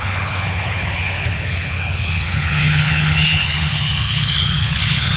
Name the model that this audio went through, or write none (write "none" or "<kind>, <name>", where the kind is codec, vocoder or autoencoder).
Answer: codec, HILCodec